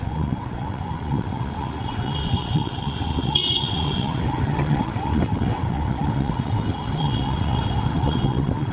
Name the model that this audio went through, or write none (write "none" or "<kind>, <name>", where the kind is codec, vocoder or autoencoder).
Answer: vocoder, WaveNeXt